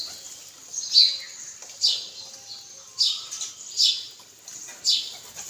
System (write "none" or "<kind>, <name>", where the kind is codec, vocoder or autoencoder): none